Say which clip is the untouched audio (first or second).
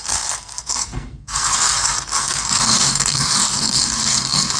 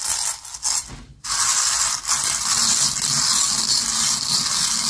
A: second